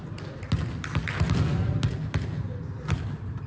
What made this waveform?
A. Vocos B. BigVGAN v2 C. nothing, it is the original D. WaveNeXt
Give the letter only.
C